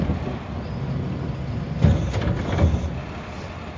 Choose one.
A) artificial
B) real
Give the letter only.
B